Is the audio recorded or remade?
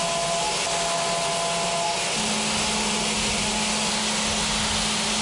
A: recorded